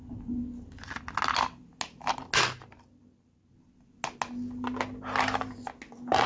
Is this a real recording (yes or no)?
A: yes